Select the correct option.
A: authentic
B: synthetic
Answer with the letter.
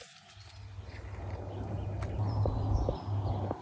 A